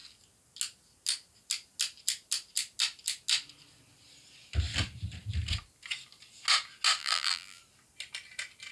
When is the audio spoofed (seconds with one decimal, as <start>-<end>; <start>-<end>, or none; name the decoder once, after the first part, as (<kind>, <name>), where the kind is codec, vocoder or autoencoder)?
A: 7.0-7.6 (vocoder, BigVGAN v2)

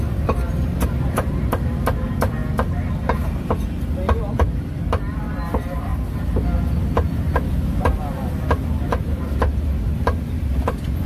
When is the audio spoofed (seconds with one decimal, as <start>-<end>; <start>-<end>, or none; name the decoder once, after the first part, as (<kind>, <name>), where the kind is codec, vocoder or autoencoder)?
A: none